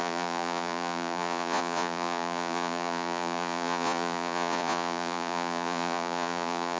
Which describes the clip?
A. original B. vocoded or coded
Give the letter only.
B